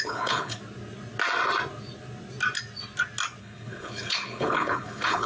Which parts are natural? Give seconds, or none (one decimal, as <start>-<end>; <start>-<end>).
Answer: 0.6-3.4